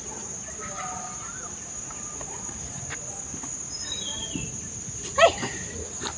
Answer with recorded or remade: recorded